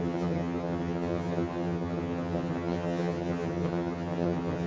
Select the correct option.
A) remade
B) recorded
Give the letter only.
A